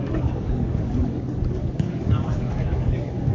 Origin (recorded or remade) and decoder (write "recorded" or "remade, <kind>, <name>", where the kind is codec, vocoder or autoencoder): remade, codec, DAC